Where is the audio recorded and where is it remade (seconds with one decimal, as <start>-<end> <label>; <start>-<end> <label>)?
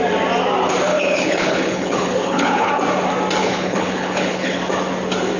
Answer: 0.0-0.9 recorded; 0.9-2.7 remade; 2.7-3.4 recorded; 3.4-4.6 remade; 4.6-5.4 recorded